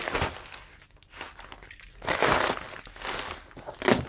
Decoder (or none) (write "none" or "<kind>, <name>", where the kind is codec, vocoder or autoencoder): none